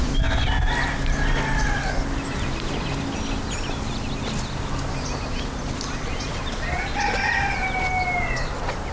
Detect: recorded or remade recorded